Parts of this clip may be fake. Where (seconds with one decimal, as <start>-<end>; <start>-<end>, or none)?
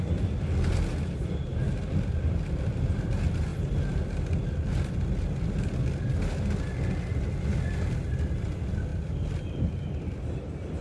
none